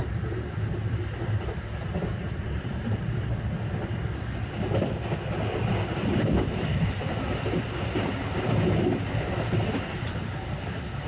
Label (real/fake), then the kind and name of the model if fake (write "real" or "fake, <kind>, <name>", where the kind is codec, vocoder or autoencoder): real